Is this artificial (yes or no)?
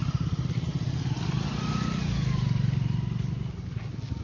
no